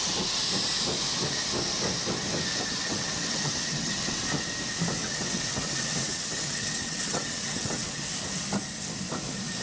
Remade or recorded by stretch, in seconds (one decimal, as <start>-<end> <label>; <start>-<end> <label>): 0.0-2.8 recorded; 2.8-4.2 remade; 4.2-5.0 recorded; 5.0-8.0 remade; 8.0-9.6 recorded